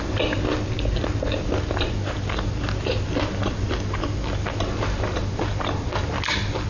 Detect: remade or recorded recorded